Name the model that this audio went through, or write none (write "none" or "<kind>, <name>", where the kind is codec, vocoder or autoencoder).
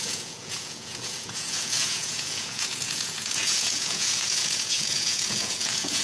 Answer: vocoder, Vocos